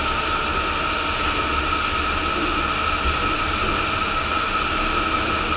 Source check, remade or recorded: recorded